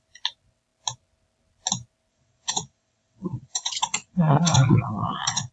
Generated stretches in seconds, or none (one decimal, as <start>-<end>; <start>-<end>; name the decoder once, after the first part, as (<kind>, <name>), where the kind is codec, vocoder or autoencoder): 2.1-5.5 (vocoder, WaveNeXt)